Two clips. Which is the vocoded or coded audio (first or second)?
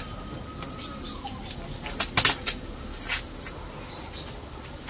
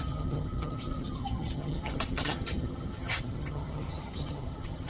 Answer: second